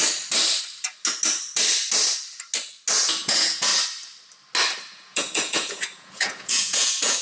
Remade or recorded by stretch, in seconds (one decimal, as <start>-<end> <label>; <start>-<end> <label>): 0.0-3.1 recorded; 3.1-3.7 remade; 3.7-4.9 recorded; 4.9-7.2 remade